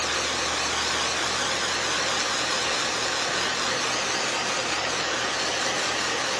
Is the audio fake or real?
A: real